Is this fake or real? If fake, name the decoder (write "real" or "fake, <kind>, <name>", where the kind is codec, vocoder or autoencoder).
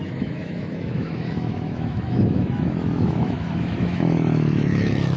fake, autoencoder, DAC-VAE